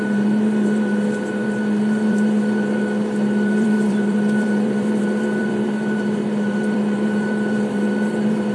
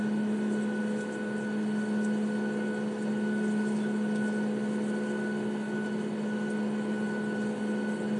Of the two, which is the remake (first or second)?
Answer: first